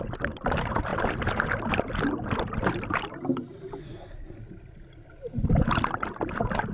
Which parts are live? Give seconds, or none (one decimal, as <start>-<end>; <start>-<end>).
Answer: 0.0-3.8; 4.4-6.7